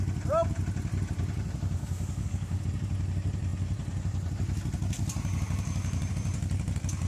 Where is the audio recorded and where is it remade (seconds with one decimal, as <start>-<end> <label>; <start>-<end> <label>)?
0.0-1.8 recorded; 1.8-2.6 remade; 2.6-7.1 recorded